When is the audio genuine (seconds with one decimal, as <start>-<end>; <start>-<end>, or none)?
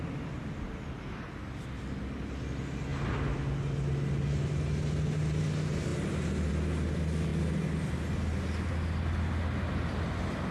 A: 0.0-10.5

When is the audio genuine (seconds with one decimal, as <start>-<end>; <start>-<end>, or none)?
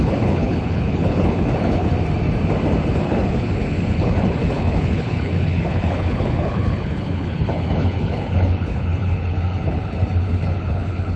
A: 1.9-2.9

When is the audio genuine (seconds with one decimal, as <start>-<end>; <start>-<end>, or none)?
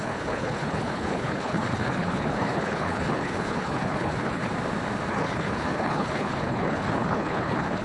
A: 4.5-5.1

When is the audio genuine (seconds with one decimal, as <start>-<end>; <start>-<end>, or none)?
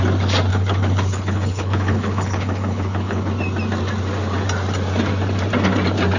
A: 0.0-0.5; 3.3-6.2